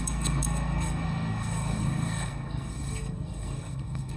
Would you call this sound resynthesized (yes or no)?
yes